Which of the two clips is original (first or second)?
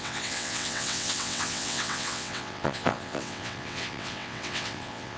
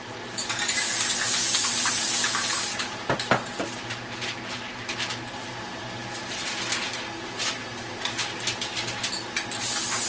second